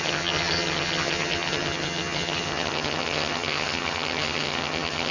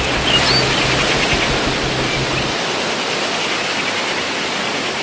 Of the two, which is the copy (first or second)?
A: first